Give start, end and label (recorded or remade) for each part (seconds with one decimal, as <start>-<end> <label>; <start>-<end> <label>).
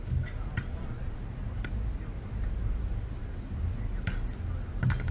0.0-0.7 recorded; 0.7-1.2 remade; 1.2-5.1 recorded